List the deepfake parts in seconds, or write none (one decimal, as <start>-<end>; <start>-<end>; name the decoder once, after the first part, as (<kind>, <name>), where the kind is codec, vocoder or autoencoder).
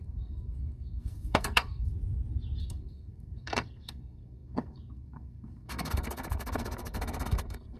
0.0-1.9 (codec, SNAC); 2.6-7.8